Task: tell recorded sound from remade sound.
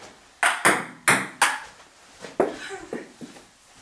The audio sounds recorded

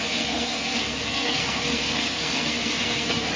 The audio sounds remade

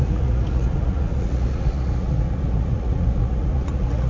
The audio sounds remade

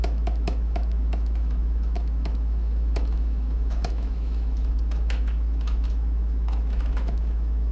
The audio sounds remade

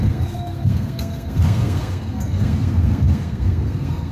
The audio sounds remade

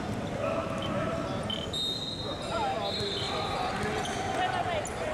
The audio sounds recorded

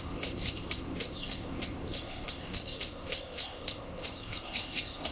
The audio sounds remade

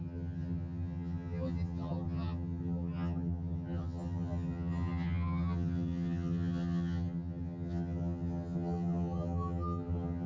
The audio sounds remade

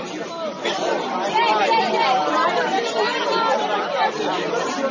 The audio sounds recorded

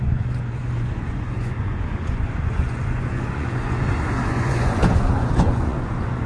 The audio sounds remade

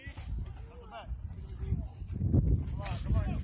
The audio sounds recorded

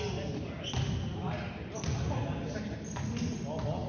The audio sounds recorded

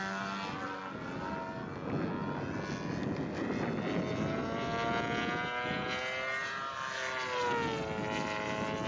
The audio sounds recorded